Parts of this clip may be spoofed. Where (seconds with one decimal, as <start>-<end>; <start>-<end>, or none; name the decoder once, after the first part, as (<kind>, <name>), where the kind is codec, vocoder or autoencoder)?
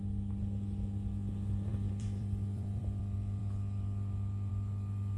1.7-3.0 (vocoder, BigVGAN v2)